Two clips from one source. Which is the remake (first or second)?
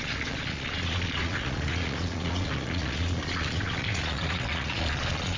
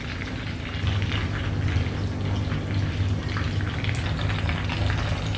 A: first